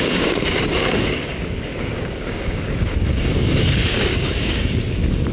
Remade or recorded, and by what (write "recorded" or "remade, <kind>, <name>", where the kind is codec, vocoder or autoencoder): remade, codec, DAC